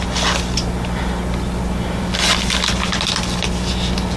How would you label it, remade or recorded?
recorded